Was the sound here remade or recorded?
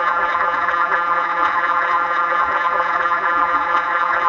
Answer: remade